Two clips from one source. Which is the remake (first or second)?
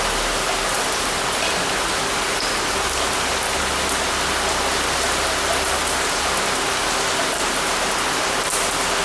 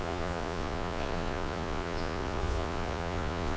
second